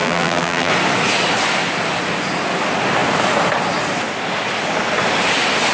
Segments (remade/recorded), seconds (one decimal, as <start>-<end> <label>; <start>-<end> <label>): 0.0-0.7 remade; 0.7-5.7 recorded